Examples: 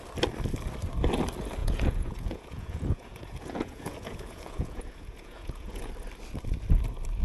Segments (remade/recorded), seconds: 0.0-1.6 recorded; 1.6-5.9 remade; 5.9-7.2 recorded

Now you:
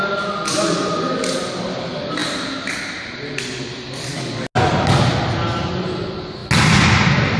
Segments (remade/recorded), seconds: 0.0-7.4 recorded

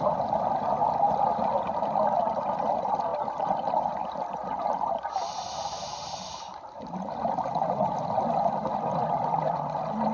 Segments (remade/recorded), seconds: 0.0-10.1 recorded